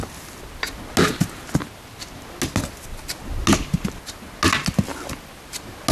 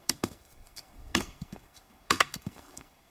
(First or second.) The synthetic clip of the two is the second